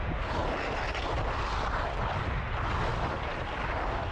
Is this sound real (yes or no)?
yes